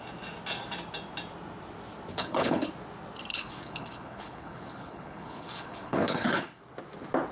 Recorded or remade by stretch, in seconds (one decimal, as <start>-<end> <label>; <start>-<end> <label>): 0.0-2.1 recorded; 2.1-2.7 remade; 2.7-3.3 recorded; 3.3-6.6 remade; 6.6-7.3 recorded